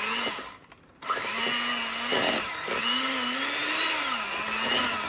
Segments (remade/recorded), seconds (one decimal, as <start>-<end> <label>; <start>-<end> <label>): 0.0-5.1 recorded

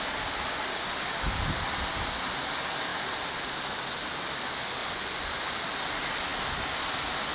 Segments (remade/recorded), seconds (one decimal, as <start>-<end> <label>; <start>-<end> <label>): 0.0-4.8 recorded; 4.8-5.6 remade; 5.6-7.3 recorded

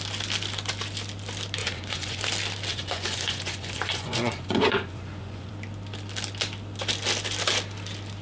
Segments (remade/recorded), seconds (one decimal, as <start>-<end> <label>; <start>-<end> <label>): 0.0-1.6 recorded; 1.6-2.2 remade; 2.2-2.7 recorded; 2.7-5.5 remade; 5.5-8.2 recorded

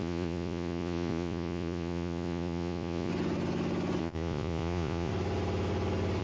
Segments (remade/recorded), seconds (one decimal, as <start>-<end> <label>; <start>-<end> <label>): 0.0-3.1 remade; 3.1-4.0 recorded; 4.0-5.1 remade; 5.1-6.2 recorded

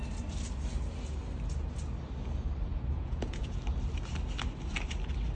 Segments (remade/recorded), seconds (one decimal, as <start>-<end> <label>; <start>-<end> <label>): 0.0-2.7 recorded; 2.7-3.6 remade; 3.6-5.4 recorded

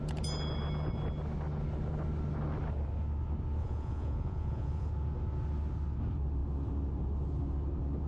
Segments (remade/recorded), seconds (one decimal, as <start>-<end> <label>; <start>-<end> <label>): 0.0-3.6 recorded; 3.6-4.9 remade; 4.9-8.1 recorded

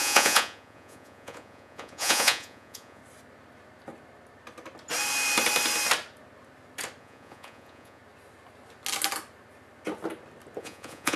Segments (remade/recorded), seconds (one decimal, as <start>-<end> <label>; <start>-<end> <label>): 0.0-3.0 remade; 3.0-7.0 recorded; 7.0-8.0 remade; 8.0-10.6 recorded; 10.6-11.2 remade